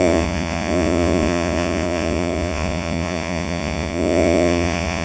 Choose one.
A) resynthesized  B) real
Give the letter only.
A